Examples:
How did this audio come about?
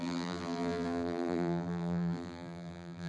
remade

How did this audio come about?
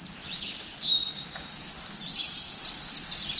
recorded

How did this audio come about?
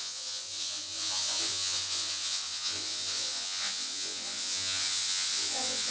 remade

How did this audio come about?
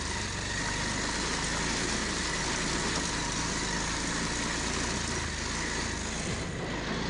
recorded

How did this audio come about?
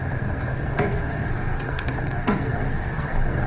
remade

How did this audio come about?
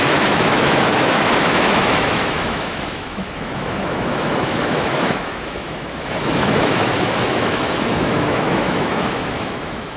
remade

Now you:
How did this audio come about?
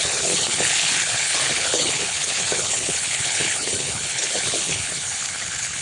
remade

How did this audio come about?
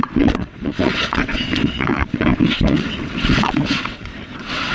remade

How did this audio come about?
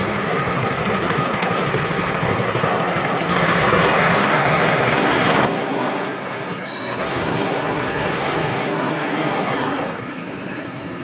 remade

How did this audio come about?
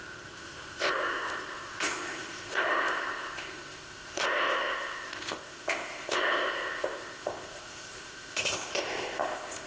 remade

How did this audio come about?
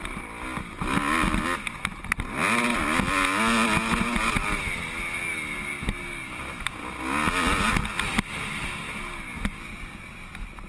recorded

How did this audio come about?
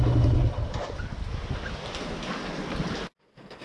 recorded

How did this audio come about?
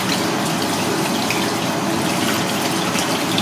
recorded